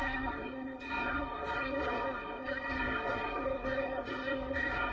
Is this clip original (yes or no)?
no